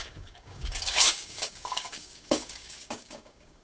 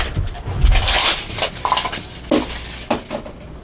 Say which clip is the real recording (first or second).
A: second